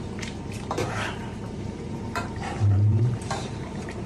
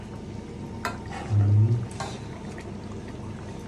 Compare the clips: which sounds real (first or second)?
second